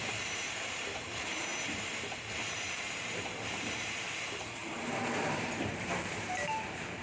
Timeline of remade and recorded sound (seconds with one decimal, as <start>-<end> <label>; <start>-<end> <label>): 0.0-1.5 remade; 1.5-2.4 recorded; 2.4-7.0 remade

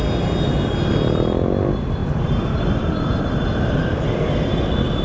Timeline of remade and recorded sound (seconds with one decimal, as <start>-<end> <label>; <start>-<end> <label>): 0.0-2.0 recorded; 2.0-4.6 remade; 4.6-5.0 recorded

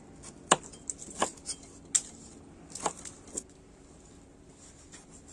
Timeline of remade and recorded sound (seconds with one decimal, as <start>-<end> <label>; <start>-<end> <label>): 0.0-5.3 recorded

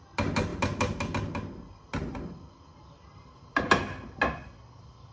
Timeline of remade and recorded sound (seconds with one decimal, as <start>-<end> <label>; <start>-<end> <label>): 0.0-5.1 recorded

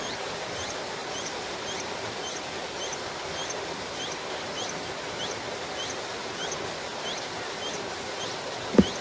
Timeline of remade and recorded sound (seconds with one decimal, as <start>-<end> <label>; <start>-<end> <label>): 0.0-1.0 recorded; 1.0-1.5 remade; 1.5-9.0 recorded

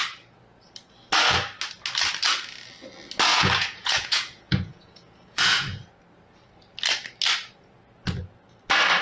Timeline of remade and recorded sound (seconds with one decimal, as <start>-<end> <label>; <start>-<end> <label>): 0.0-3.3 recorded; 3.3-5.9 remade; 5.9-9.0 recorded

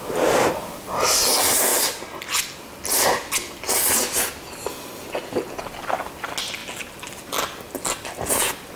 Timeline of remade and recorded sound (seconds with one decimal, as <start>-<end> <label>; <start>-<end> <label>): 0.0-8.8 recorded